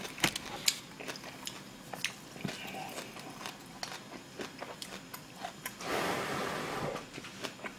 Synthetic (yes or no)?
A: no